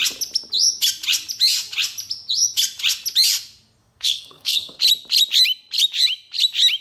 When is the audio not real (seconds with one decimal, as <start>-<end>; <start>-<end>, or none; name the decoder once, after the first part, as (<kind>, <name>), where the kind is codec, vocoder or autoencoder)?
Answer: 3.8-4.8 (codec, SNAC)